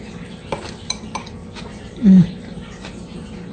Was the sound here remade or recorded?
recorded